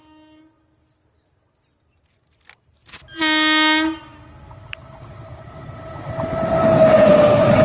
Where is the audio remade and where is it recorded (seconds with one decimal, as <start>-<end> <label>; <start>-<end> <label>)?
0.0-7.6 recorded